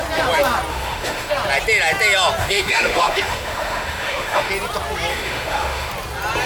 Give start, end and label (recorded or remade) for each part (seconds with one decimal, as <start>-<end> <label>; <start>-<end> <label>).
0.0-0.7 recorded; 0.7-1.3 remade; 1.3-2.4 recorded; 2.4-4.5 remade; 4.5-5.1 recorded; 5.1-5.9 remade; 5.9-6.5 recorded